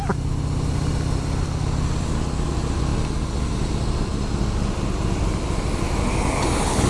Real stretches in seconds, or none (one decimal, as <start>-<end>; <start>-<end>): 0.0-6.9